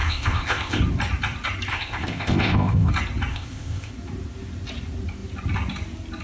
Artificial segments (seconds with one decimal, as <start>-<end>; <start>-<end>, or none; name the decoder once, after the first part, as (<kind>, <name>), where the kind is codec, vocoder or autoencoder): 0.0-0.8 (codec, ZipCodec); 1.7-2.9; 3.3-3.9